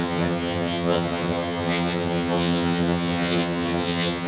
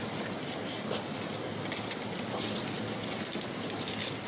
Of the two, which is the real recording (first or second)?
second